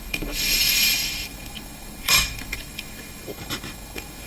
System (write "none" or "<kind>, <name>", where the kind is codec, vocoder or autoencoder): autoencoder, DAC-VAE